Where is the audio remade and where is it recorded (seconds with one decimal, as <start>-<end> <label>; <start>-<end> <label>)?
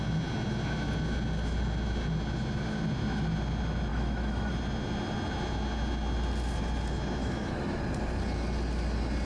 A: 0.0-3.9 recorded; 3.9-4.5 remade; 4.5-7.2 recorded; 7.2-7.8 remade; 7.8-9.3 recorded